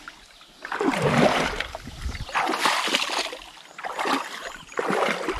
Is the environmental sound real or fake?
real